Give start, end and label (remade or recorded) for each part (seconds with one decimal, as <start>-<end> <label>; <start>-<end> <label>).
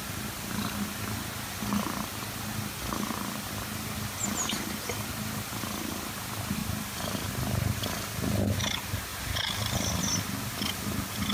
0.0-6.6 recorded; 6.6-7.3 remade; 7.3-9.1 recorded; 9.1-10.0 remade; 10.0-11.3 recorded